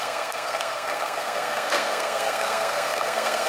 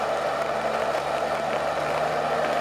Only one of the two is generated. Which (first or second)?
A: first